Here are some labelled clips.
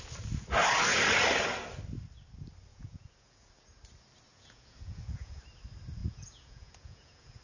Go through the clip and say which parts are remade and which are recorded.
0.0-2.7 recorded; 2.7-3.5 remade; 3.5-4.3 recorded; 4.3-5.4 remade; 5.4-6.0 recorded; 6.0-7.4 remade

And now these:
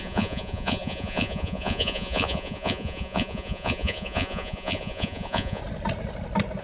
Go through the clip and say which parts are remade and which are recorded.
0.0-5.6 remade; 5.6-6.6 recorded

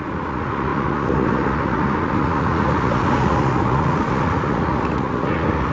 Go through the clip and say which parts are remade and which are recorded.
0.0-5.7 remade